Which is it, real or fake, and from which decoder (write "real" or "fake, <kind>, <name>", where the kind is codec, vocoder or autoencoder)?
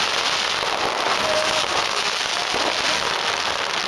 real